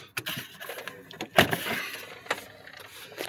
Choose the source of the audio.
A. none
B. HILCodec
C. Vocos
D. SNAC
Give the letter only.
A